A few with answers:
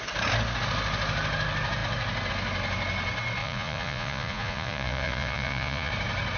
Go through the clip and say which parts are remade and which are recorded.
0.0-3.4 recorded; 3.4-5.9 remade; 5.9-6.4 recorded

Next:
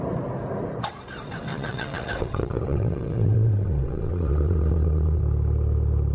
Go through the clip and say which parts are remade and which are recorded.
0.0-1.5 recorded; 1.5-5.2 remade; 5.2-6.1 recorded